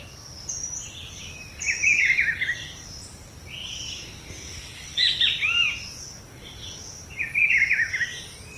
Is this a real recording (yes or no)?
yes